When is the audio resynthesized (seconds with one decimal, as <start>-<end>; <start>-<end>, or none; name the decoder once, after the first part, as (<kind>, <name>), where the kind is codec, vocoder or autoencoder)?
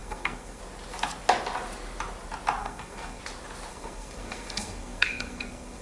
0.0-0.6 (codec, SNAC); 2.6-3.2; 3.7-5.8